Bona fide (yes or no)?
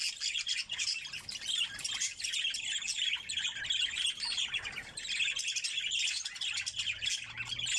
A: yes